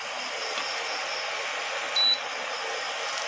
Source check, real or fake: real